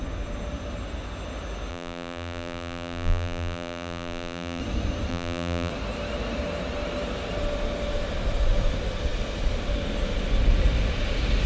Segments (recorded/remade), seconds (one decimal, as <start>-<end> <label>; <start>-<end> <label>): 0.0-1.7 recorded; 1.7-4.6 remade; 4.6-5.1 recorded; 5.1-5.7 remade; 5.7-11.5 recorded